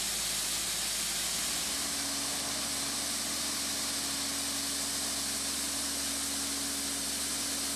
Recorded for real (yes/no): yes